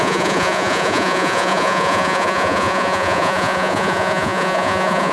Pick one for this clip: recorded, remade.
remade